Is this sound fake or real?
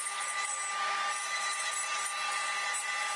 real